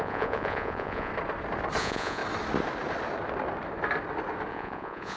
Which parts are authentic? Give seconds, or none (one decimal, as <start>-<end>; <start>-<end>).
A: 1.1-1.8; 2.2-4.5